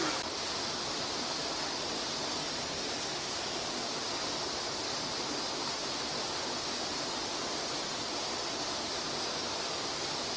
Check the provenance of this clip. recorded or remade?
recorded